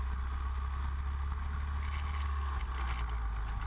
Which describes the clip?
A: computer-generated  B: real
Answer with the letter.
B